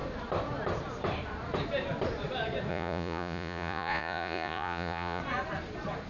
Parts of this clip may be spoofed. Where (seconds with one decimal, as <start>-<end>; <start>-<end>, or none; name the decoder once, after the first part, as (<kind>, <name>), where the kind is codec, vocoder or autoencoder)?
2.7-5.2 (vocoder, Vocos)